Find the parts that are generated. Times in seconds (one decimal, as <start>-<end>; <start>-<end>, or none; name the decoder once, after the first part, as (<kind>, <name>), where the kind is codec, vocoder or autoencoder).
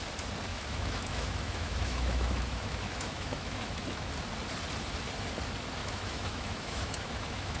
0.5-4.1 (autoencoder, DAC-VAE); 5.8-7.6